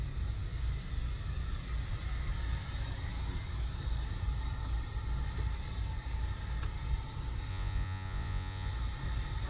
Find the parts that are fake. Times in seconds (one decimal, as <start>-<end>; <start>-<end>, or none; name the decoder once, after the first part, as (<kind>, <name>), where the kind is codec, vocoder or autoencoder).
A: 7.5-8.7 (vocoder, Vocos)